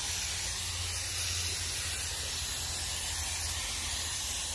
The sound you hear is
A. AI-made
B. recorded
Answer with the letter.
B